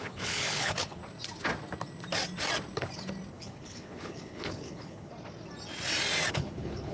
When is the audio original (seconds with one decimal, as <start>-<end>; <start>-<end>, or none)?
1.0-3.3; 5.1-6.3